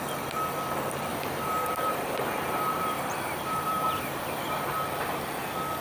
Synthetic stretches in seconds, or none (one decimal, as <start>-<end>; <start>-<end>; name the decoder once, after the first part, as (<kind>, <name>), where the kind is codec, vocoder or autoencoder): 1.1-4.6 (vocoder, BigVGAN v2)